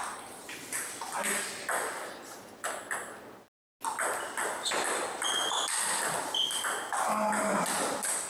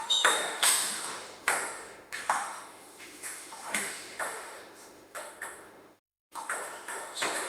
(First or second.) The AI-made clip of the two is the second